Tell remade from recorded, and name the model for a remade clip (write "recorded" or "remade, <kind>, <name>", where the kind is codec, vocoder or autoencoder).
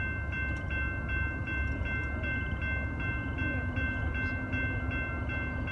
recorded